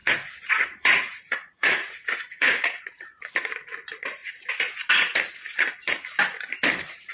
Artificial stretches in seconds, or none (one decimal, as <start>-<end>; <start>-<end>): 0.0-3.3